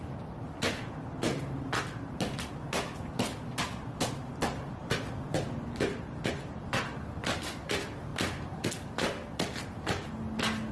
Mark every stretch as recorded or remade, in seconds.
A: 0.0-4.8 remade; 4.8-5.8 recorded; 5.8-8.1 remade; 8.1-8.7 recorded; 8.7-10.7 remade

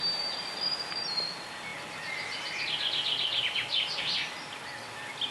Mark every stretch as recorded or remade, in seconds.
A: 0.0-5.3 recorded

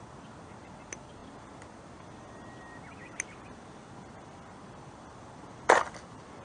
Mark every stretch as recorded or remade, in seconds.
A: 0.0-6.4 recorded